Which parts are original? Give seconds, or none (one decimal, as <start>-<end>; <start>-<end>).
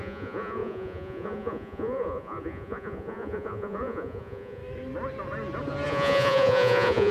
4.6-5.9